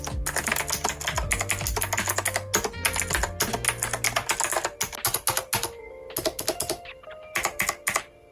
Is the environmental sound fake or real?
real